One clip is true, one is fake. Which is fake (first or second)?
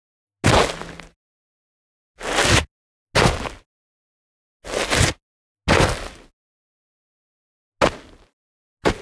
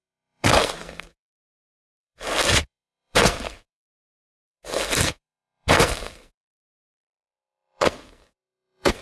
second